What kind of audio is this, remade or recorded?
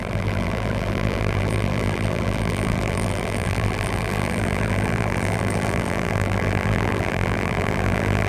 remade